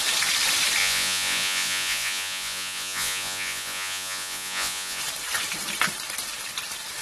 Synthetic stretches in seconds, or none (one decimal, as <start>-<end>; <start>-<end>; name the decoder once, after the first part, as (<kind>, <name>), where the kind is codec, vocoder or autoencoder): 0.8-5.0 (vocoder, Vocos)